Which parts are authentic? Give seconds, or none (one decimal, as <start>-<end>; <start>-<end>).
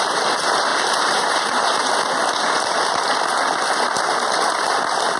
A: 0.0-0.7; 1.9-5.2